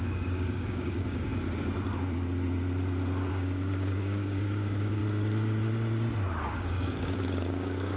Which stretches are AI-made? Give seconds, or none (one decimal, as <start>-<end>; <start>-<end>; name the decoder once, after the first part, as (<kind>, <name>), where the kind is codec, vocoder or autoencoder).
0.0-1.3 (codec, DAC); 3.3-5.0; 6.5-8.0